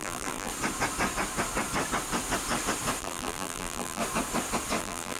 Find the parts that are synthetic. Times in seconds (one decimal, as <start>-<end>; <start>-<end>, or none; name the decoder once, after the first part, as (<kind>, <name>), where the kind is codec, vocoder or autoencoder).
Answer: 0.0-0.5 (vocoder, BigVGAN v2); 3.0-4.0; 4.8-5.2